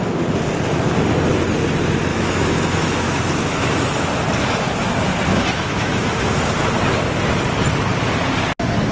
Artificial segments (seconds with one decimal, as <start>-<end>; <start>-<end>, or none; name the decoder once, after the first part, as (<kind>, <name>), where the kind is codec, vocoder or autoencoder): 2.1-3.9 (autoencoder, DAC-VAE); 5.3-6.1